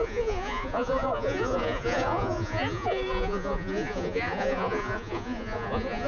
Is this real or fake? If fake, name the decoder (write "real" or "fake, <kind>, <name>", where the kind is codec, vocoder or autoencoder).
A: fake, vocoder, Vocos